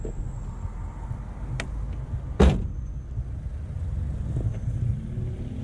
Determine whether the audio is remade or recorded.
recorded